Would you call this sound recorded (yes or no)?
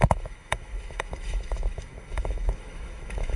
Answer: no